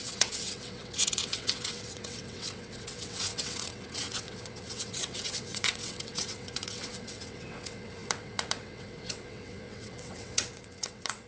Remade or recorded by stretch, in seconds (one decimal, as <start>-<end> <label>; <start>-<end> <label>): 0.0-11.3 remade